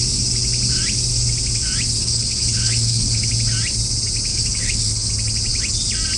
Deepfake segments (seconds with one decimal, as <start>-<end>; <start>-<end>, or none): 2.0-3.3; 4.3-5.1